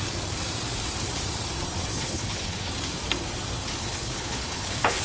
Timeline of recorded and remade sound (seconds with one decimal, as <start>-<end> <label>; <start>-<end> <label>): 0.0-1.9 recorded; 1.9-2.7 remade; 2.7-3.8 recorded; 3.8-5.0 remade